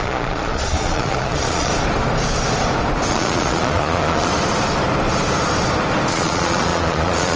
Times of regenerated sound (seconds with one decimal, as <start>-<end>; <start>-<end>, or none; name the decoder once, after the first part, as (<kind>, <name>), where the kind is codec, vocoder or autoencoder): 0.0-1.7 (vocoder, Vocos); 3.1-4.3; 6.1-7.4